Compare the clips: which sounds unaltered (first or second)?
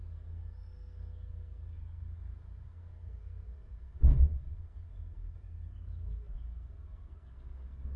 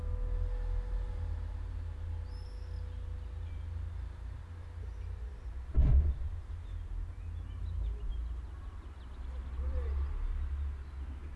second